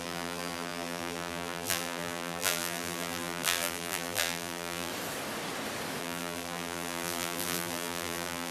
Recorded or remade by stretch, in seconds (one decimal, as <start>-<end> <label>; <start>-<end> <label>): 0.0-4.9 remade; 4.9-6.0 recorded; 6.0-8.5 remade